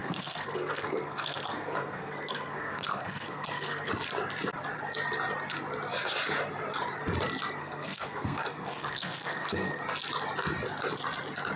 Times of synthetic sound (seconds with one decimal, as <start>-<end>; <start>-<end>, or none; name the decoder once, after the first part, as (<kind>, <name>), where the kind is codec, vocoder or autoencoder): 0.0-3.9 (codec, SNAC); 7.6-9.8